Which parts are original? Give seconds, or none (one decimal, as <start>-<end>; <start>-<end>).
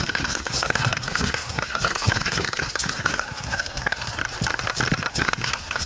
4.2-5.1